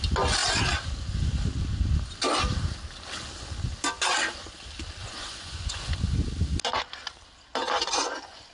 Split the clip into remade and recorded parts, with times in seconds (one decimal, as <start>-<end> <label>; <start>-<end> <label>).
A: 0.0-5.0 recorded; 5.0-5.9 remade; 5.9-7.6 recorded; 7.6-8.5 remade